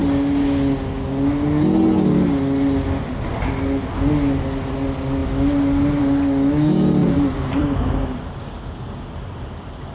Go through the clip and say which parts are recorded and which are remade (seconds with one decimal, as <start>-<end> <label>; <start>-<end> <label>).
0.0-7.0 recorded; 7.0-8.3 remade; 8.3-9.9 recorded

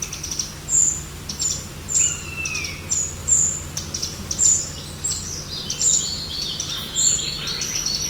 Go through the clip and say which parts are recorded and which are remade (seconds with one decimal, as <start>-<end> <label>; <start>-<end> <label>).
0.0-3.2 recorded; 3.2-4.7 remade; 4.7-6.1 recorded; 6.1-6.9 remade; 6.9-8.1 recorded